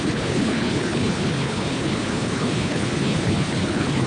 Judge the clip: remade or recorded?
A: remade